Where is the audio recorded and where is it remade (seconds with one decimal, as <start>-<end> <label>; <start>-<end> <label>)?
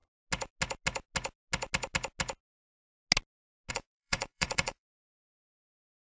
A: 0.0-3.7 recorded; 3.7-6.1 remade